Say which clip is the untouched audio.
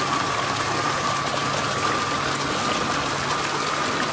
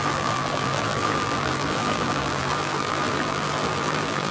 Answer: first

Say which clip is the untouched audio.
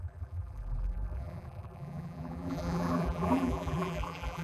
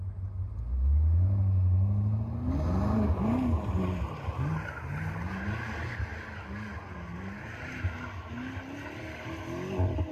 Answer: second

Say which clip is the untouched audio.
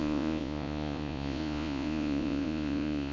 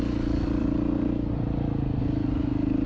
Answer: second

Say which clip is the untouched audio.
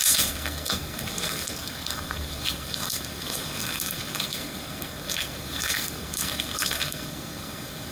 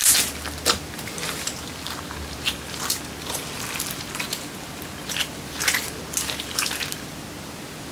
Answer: second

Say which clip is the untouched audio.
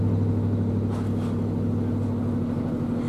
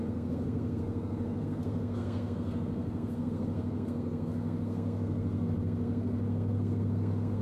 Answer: first